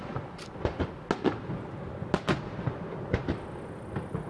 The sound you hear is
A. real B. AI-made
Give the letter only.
A